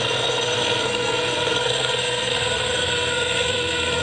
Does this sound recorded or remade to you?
remade